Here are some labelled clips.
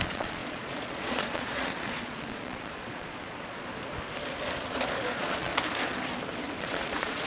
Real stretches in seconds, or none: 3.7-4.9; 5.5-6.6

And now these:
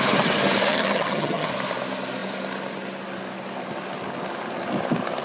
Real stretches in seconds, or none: 0.0-0.7; 1.5-5.2

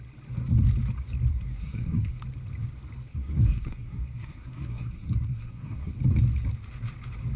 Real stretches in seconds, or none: 0.0-1.3; 2.2-3.1; 5.9-7.4

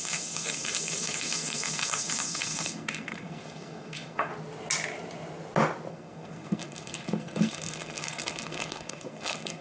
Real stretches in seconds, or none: 4.3-5.9

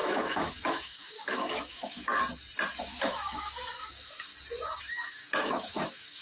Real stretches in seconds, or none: 2.1-2.8; 4.3-4.8

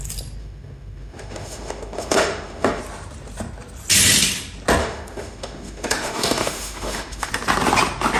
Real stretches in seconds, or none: 0.0-0.4; 2.8-4.8; 7.3-8.2

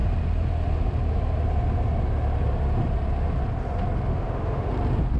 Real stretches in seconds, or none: 0.0-4.1; 4.7-5.2

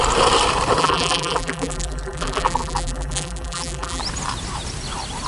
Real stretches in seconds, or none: 0.0-0.8; 4.0-5.3